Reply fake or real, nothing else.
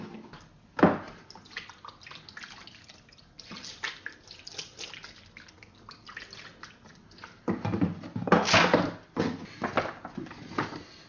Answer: real